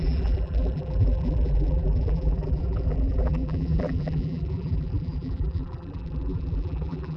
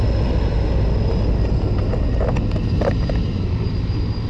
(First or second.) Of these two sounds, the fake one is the first